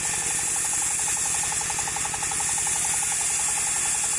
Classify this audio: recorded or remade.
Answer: recorded